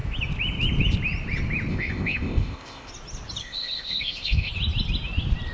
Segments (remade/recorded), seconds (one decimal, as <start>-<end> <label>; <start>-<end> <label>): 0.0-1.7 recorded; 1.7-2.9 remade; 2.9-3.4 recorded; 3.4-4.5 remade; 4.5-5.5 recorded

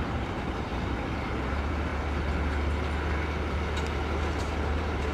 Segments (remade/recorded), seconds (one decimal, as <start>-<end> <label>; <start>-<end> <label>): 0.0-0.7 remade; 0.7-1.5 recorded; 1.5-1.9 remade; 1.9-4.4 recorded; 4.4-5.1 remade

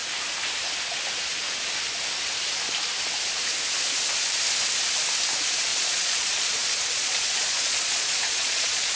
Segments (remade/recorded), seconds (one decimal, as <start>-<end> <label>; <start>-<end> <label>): 0.0-5.7 recorded; 5.7-9.0 remade

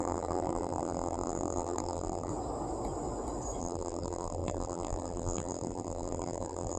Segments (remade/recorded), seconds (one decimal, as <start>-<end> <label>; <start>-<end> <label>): 0.0-2.3 remade; 2.3-3.6 recorded; 3.6-6.8 remade

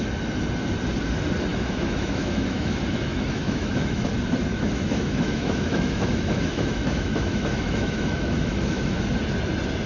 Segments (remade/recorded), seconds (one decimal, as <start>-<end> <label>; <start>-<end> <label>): 0.0-1.5 recorded; 1.5-4.1 remade; 4.1-4.5 recorded; 4.5-9.0 remade; 9.0-9.9 recorded

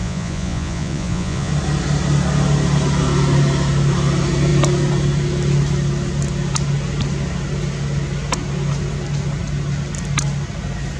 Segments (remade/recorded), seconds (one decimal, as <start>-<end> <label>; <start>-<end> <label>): 0.0-1.5 remade; 1.5-11.0 recorded

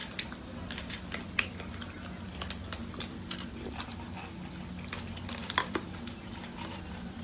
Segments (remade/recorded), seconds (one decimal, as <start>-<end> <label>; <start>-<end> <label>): 0.0-5.4 recorded; 5.4-7.2 remade